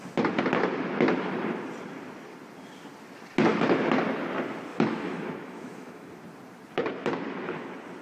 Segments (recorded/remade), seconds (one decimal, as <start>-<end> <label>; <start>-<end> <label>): 0.0-4.7 recorded; 4.7-6.1 remade; 6.1-8.0 recorded